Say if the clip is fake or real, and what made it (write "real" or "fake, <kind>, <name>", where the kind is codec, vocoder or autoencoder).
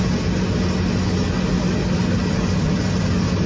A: real